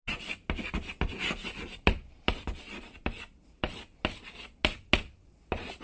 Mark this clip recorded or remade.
recorded